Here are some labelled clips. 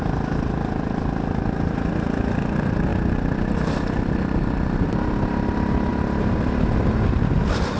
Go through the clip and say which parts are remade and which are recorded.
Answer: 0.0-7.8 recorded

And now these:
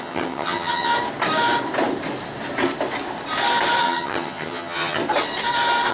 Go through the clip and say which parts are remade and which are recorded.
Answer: 0.0-0.9 remade; 0.9-3.8 recorded; 3.8-5.0 remade; 5.0-5.9 recorded